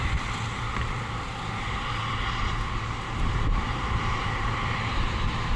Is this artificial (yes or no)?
yes